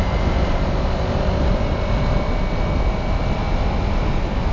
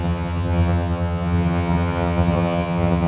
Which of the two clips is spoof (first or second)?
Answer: second